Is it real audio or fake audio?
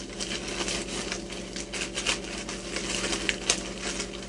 real